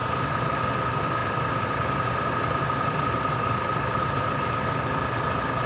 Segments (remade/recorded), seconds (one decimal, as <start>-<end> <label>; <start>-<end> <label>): 0.0-0.6 remade; 0.6-1.2 recorded; 1.2-4.6 remade; 4.6-5.7 recorded